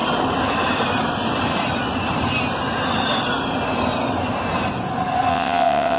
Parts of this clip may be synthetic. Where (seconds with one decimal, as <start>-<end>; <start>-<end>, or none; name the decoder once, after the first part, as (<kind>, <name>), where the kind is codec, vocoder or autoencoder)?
5.3-6.0 (vocoder, WaveNeXt)